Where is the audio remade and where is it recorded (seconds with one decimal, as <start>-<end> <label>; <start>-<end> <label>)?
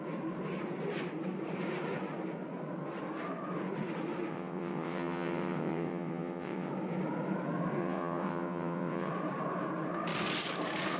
0.0-4.3 recorded; 4.3-6.7 remade; 6.7-7.8 recorded; 7.8-9.1 remade; 9.1-11.0 recorded